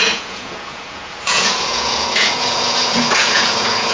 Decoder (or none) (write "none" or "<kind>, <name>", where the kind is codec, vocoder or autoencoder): vocoder, Vocos